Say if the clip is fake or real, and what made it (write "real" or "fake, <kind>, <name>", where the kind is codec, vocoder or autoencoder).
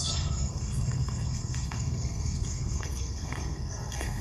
fake, codec, SNAC